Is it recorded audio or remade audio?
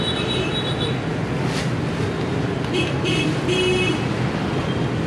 recorded